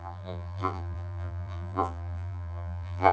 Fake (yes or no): yes